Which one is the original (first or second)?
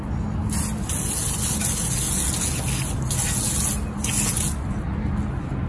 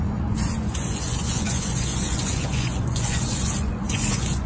first